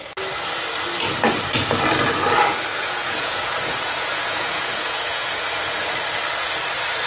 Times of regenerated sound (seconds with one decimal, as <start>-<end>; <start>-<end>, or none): 2.7-5.9